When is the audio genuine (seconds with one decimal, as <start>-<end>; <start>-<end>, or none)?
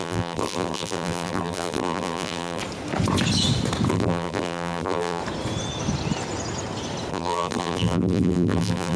2.6-3.9; 5.2-7.1